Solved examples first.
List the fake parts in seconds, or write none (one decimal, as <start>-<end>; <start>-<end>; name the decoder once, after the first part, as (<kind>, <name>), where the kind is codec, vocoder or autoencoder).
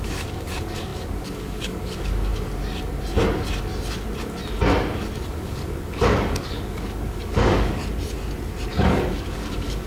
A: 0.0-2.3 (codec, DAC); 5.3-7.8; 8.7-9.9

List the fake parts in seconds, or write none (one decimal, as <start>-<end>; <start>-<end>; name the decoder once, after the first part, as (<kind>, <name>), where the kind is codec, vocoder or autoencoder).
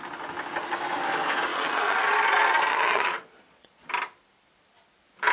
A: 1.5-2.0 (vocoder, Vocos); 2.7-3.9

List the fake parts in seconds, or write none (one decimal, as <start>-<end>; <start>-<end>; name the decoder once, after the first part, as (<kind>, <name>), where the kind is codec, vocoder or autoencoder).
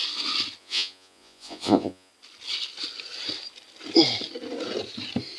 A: 0.6-2.1 (vocoder, Vocos)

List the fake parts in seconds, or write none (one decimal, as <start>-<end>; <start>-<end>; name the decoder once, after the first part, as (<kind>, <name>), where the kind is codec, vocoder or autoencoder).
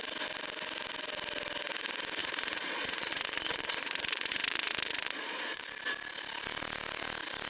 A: 2.2-5.6 (vocoder, Vocos)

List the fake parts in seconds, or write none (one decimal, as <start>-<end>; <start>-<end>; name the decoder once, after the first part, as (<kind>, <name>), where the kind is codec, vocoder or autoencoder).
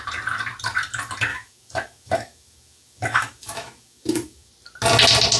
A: 1.3-4.5 (autoencoder, DAC-VAE)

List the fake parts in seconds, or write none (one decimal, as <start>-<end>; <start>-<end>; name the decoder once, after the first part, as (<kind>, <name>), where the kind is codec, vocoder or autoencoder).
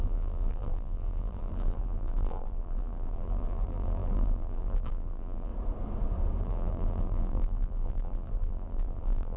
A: 0.0-5.5 (vocoder, BigVGAN v2); 6.4-9.4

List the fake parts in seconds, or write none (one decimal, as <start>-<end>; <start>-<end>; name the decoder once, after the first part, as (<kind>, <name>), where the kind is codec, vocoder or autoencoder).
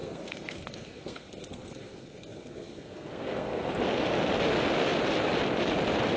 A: 0.0-3.7 (codec, SNAC)